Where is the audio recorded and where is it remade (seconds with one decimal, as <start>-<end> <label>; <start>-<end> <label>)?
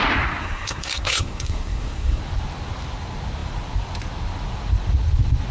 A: 0.0-0.4 recorded; 0.4-2.2 remade; 2.2-5.5 recorded